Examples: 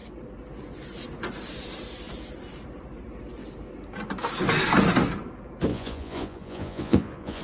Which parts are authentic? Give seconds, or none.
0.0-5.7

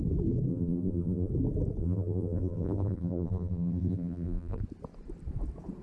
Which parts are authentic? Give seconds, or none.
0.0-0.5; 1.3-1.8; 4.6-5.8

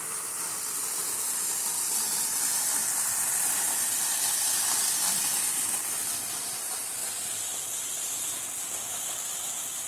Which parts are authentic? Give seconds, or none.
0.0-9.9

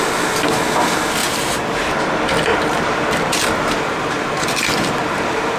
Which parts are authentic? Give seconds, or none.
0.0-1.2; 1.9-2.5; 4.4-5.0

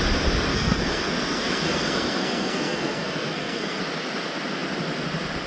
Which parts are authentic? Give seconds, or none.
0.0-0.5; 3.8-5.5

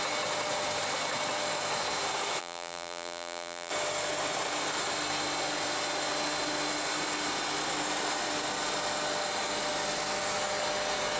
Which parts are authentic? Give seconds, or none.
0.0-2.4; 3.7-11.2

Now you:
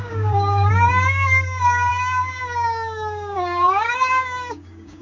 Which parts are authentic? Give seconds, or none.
none